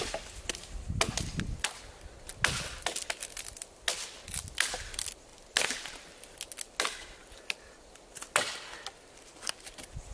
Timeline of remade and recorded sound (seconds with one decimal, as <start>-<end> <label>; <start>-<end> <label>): 0.0-10.1 recorded